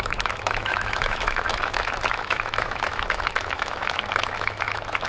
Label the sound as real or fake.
fake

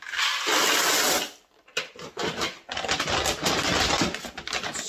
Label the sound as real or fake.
real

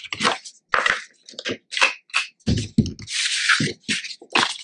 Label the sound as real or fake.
real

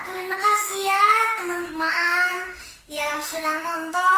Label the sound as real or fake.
fake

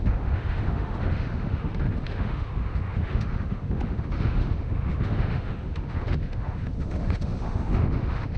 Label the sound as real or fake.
fake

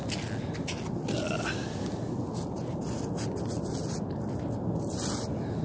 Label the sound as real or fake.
real